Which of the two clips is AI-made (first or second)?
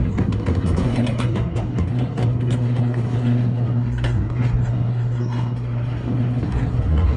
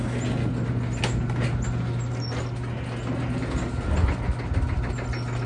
first